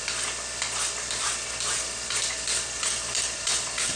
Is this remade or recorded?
recorded